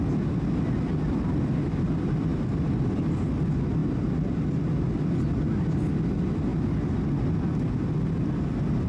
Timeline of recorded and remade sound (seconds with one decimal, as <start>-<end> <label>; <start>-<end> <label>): 0.0-2.3 recorded; 2.3-3.3 remade; 3.3-8.9 recorded

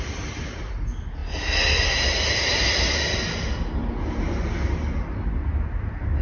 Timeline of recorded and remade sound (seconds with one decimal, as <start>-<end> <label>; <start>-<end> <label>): 0.0-6.2 recorded

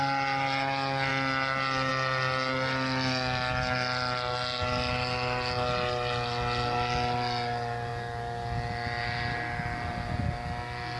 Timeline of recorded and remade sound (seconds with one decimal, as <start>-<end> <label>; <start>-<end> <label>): 0.0-11.0 recorded

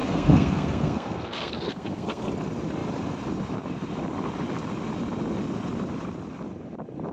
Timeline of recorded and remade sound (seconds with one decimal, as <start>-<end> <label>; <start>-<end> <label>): 0.0-2.3 remade; 2.3-7.1 recorded

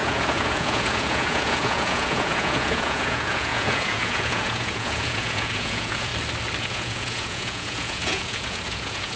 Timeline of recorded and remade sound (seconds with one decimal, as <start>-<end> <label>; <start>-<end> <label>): 0.0-6.1 remade; 6.1-6.6 recorded; 6.6-9.2 remade

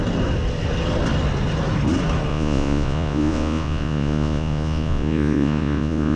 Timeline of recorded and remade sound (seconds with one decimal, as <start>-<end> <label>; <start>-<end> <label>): 0.0-2.3 recorded; 2.3-6.2 remade